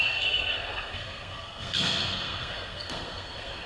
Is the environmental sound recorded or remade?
remade